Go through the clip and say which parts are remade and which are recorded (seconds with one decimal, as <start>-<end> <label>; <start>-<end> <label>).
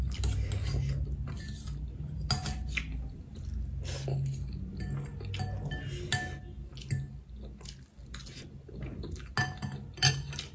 0.0-10.5 recorded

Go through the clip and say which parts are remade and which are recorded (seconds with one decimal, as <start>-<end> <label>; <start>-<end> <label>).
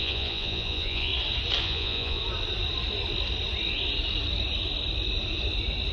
0.0-1.1 remade; 1.1-1.6 recorded; 1.6-2.2 remade; 2.2-5.9 recorded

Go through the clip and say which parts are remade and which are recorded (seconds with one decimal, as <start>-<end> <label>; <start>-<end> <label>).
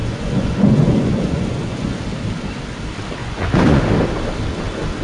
0.0-2.0 remade; 2.0-3.2 recorded; 3.2-3.8 remade; 3.8-5.0 recorded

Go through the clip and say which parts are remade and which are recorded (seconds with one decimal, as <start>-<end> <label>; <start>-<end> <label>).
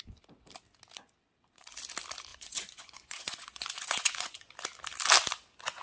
0.0-2.3 recorded; 2.3-4.5 remade; 4.5-5.8 recorded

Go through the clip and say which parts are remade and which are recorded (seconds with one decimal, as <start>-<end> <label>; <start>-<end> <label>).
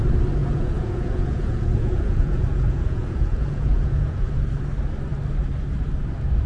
0.0-0.4 recorded; 0.4-4.3 remade; 4.3-6.5 recorded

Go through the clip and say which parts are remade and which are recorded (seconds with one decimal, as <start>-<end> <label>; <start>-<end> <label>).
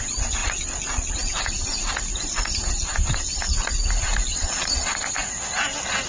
0.0-0.4 recorded; 0.4-1.1 remade; 1.1-4.3 recorded; 4.3-4.9 remade; 4.9-6.1 recorded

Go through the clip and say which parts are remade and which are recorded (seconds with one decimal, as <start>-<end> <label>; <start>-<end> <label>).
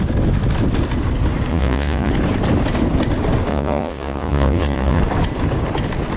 0.0-1.5 recorded; 1.5-2.1 remade; 2.1-3.5 recorded; 3.5-5.0 remade; 5.0-6.2 recorded